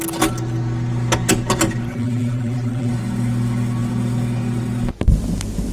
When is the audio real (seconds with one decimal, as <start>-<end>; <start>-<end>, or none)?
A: 0.0-1.9; 2.9-5.7